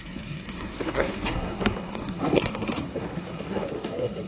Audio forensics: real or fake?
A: fake